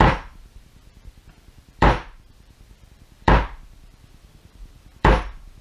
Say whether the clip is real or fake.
fake